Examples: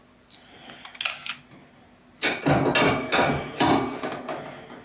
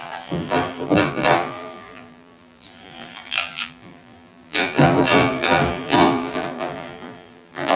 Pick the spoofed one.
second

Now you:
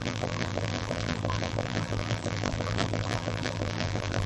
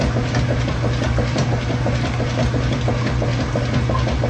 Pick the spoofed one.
first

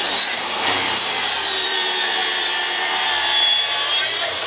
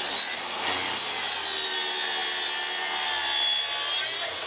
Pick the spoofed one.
first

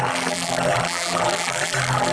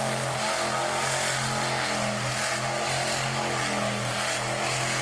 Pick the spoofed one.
first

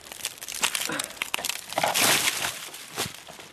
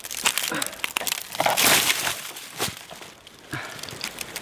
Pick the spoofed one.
first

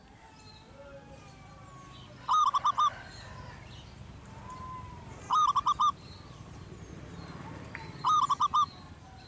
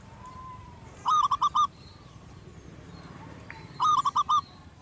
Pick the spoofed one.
second